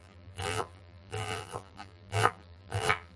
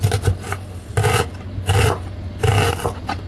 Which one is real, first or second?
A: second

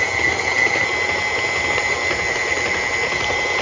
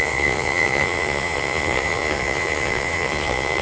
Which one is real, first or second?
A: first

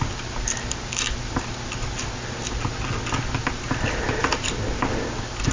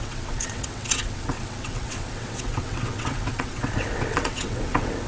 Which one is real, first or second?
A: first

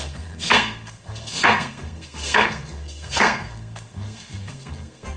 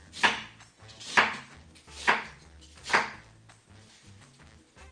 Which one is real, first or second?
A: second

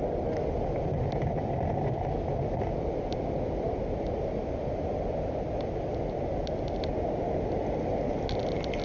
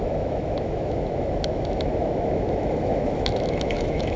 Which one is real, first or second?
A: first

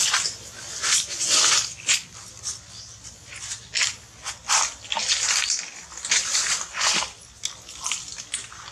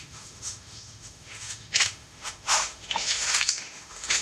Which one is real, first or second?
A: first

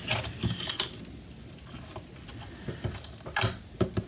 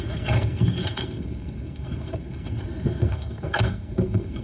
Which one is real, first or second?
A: first